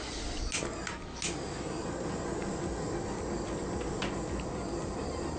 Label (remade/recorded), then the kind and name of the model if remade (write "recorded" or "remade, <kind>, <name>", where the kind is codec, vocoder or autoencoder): recorded